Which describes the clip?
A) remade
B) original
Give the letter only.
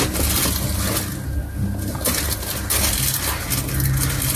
B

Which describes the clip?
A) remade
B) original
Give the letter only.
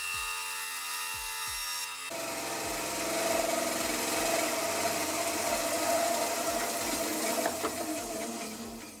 B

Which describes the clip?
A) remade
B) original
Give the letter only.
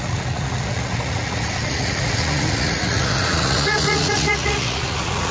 A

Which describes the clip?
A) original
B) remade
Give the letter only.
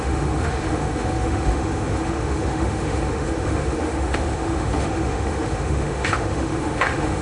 B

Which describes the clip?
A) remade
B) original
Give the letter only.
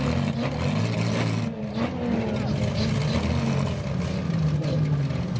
B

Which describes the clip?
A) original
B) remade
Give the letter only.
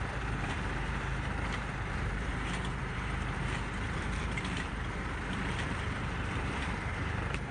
B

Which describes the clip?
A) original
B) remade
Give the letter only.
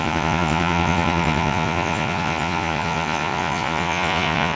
B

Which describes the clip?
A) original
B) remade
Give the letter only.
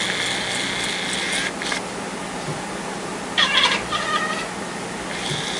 A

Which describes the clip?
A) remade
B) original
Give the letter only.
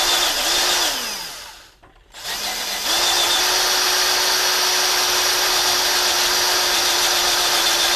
B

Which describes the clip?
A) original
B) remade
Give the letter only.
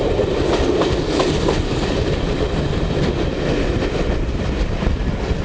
A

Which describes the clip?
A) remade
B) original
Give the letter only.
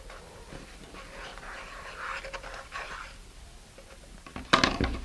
B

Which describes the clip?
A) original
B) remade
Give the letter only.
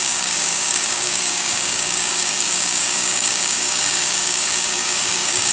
B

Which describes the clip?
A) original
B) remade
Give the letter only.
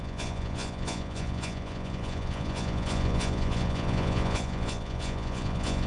B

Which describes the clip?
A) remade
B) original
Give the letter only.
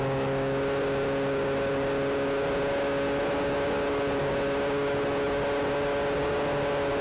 B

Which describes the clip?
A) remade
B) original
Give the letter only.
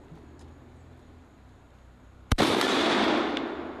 B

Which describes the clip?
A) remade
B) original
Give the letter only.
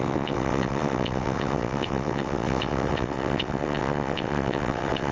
A